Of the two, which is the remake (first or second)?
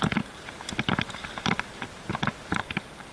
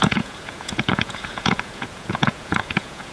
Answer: second